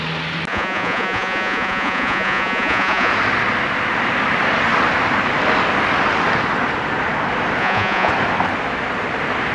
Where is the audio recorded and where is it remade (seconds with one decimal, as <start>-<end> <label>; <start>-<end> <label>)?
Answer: 0.0-0.5 recorded; 0.5-3.1 remade; 3.1-7.6 recorded; 7.6-8.1 remade; 8.1-9.5 recorded